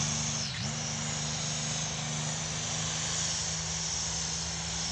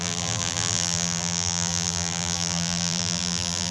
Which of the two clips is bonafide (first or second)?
first